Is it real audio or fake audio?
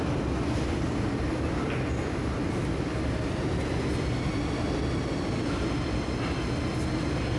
real